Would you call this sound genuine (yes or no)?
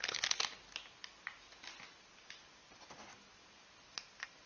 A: yes